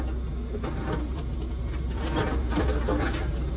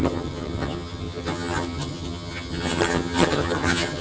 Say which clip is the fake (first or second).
second